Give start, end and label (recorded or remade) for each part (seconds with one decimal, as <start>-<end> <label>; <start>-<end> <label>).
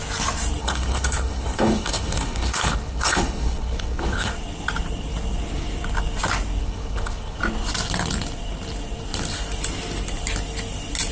0.0-0.6 recorded; 0.6-4.3 remade; 4.3-6.6 recorded; 6.6-7.4 remade; 7.4-11.1 recorded